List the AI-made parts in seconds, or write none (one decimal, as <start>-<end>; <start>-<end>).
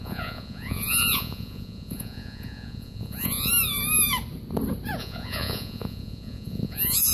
0.0-3.5; 5.0-7.1